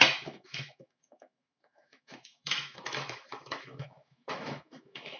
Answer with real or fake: fake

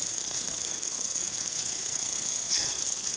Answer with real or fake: fake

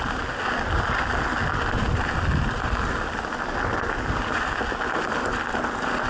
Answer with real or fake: real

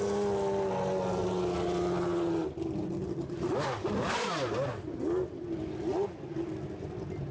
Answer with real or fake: real